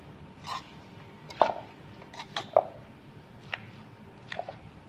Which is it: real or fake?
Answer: real